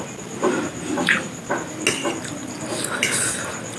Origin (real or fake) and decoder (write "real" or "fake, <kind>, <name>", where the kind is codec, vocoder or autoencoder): real